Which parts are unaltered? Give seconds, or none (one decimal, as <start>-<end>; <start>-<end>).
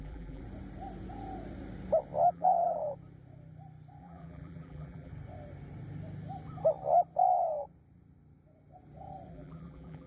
0.4-2.3; 2.8-4.0; 5.1-9.3